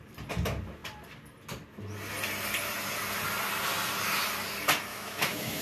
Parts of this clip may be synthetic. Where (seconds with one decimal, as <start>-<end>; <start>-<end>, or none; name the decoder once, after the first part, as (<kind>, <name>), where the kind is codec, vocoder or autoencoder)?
4.9-5.6 (autoencoder, DAC-VAE)